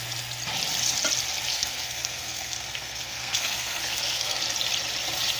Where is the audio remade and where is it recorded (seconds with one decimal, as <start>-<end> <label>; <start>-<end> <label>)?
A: 0.0-1.5 recorded; 1.5-4.4 remade; 4.4-5.4 recorded